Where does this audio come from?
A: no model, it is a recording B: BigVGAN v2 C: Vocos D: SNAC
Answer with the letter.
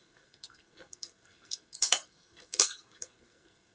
D